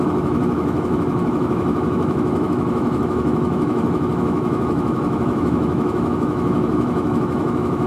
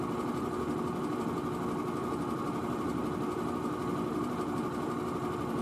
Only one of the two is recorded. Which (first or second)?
second